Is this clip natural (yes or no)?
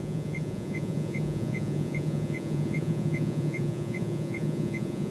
no